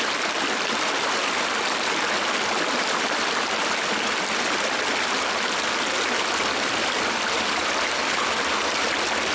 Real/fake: real